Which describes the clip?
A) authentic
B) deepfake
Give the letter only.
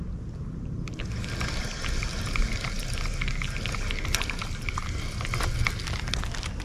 A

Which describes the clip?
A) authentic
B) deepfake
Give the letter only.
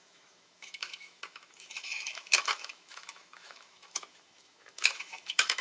B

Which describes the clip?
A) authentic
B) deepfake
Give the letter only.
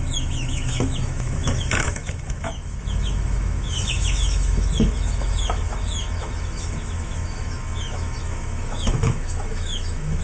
B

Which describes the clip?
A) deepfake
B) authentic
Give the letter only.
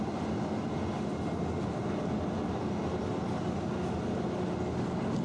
B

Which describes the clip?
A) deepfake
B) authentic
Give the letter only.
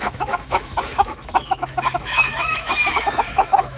A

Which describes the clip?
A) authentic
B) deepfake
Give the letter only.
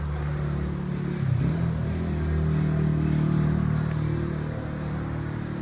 A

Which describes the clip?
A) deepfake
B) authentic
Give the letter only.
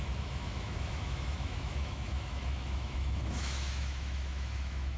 A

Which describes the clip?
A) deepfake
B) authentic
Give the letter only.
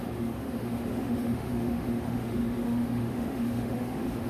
A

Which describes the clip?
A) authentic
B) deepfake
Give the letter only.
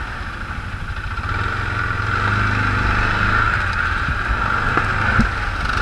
A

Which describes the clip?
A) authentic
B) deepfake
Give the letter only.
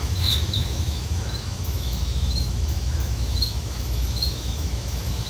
B